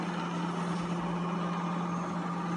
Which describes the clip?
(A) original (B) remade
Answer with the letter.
A